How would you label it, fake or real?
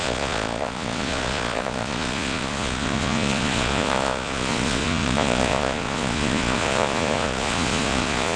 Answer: fake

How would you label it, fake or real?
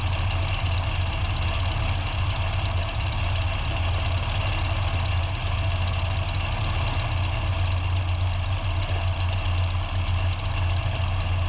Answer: real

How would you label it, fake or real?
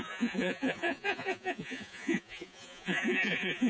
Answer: fake